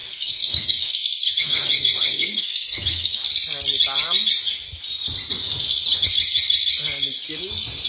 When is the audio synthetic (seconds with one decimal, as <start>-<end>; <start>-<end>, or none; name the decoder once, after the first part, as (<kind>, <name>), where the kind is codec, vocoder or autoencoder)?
0.0-3.2 (autoencoder, DAC-VAE)